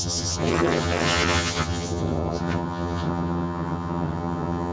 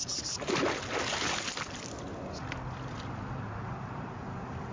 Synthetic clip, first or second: first